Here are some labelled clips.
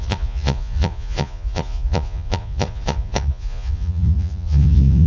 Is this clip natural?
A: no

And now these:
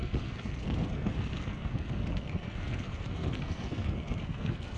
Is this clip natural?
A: no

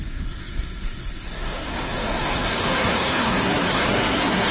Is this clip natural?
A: no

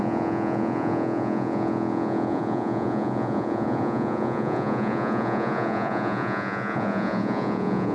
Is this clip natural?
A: no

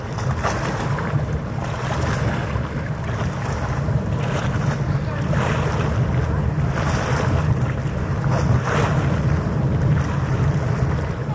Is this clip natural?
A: yes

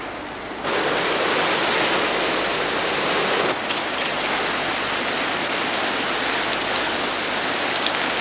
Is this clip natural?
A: yes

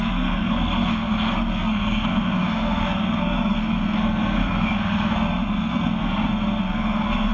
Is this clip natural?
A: no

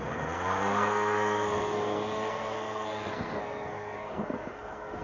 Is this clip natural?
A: no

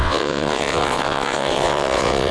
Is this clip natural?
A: no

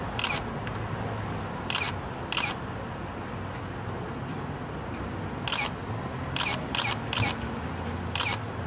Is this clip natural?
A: yes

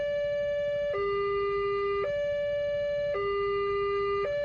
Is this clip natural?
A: no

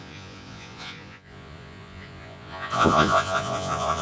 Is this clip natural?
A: no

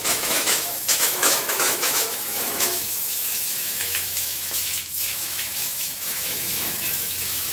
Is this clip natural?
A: no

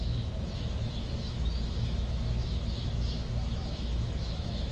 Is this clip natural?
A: no